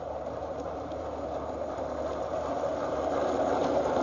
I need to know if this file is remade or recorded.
remade